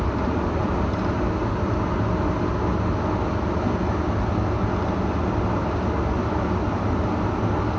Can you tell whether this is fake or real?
real